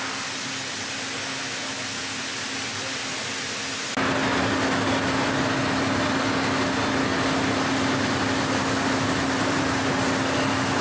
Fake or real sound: real